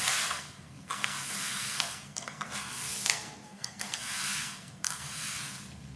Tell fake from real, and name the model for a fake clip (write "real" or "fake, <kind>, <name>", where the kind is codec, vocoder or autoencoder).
fake, codec, SNAC